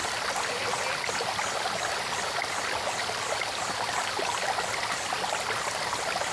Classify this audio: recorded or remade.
recorded